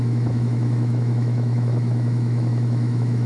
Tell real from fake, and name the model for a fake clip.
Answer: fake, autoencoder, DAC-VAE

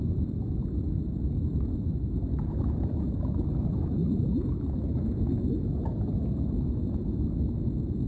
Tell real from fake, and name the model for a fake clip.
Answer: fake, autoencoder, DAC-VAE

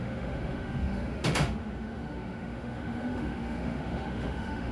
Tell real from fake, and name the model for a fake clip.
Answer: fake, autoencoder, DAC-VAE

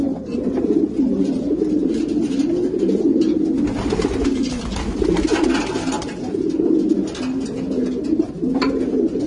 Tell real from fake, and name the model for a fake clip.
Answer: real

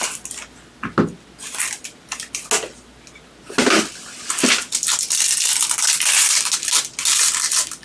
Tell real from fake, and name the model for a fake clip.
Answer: real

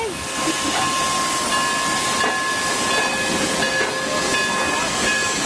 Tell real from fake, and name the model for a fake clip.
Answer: real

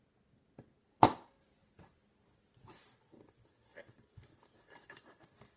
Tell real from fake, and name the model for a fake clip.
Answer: real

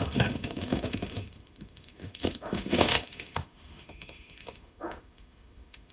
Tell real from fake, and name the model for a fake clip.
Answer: fake, autoencoder, DAC-VAE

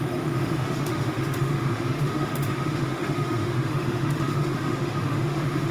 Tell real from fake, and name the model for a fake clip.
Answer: fake, autoencoder, DAC-VAE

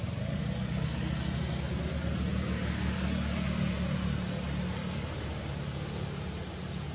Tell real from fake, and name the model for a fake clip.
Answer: real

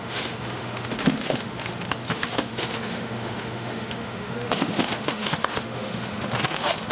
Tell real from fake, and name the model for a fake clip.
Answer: fake, autoencoder, DAC-VAE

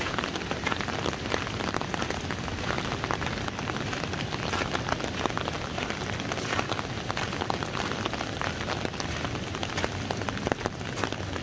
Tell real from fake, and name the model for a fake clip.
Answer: real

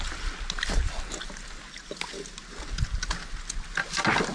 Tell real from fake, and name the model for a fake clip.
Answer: real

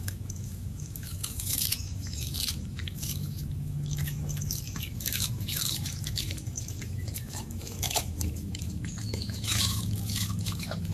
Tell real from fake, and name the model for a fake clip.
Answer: fake, autoencoder, DAC-VAE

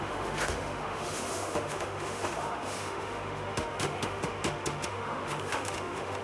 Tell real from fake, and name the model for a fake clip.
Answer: fake, autoencoder, DAC-VAE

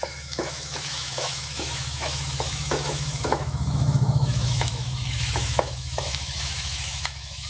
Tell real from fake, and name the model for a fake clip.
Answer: fake, autoencoder, DAC-VAE